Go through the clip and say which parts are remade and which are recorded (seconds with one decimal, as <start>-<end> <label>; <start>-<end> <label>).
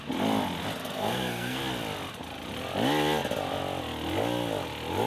0.0-0.8 recorded; 0.8-1.6 remade; 1.6-5.1 recorded